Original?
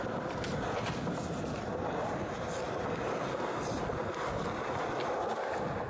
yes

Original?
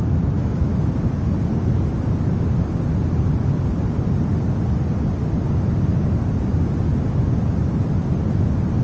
yes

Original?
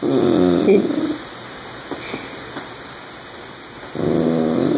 yes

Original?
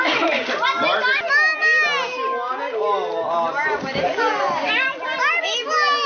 yes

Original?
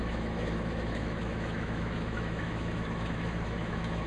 no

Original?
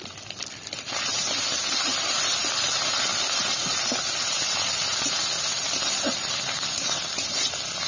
yes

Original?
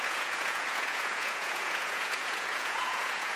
no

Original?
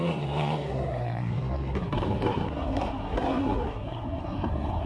no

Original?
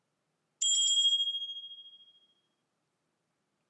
yes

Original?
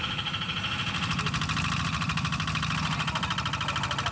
yes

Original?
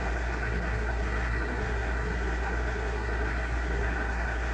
no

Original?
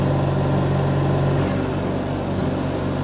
yes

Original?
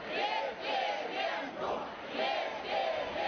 yes